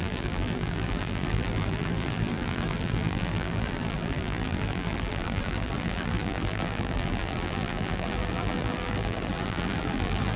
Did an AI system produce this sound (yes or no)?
yes